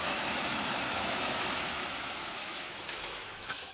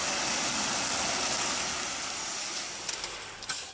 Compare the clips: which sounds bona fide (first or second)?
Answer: second